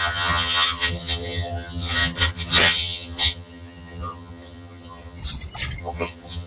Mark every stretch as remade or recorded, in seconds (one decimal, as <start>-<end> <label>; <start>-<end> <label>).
0.0-5.2 remade; 5.2-5.8 recorded; 5.8-6.5 remade